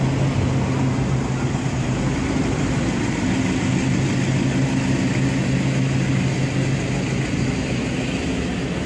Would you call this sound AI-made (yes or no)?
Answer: no